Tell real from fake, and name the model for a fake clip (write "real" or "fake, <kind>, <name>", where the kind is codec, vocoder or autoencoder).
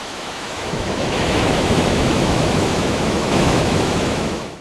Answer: fake, autoencoder, DAC-VAE